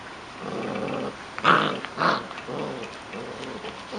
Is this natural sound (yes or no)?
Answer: yes